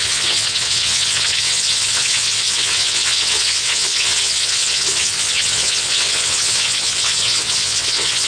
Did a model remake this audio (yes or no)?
yes